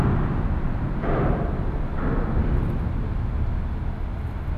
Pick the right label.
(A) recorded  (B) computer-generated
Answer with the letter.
A